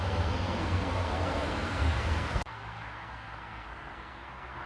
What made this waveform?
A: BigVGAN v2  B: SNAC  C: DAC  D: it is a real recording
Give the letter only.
B